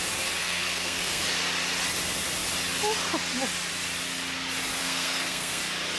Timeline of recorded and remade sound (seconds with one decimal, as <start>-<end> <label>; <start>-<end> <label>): 0.0-0.4 recorded; 0.4-1.2 remade; 1.2-4.8 recorded; 4.8-5.6 remade; 5.6-6.0 recorded